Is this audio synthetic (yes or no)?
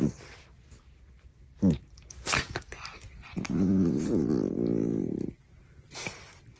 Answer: no